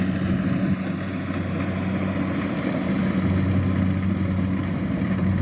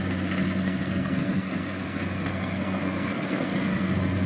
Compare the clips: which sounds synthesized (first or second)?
second